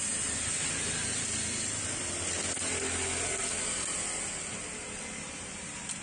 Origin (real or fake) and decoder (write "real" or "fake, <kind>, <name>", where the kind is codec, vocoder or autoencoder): real